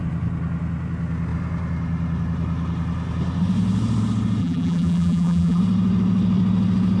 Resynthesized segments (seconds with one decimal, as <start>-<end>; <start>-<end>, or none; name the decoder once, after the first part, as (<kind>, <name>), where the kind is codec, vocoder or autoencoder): 4.4-5.6 (vocoder, BigVGAN v2)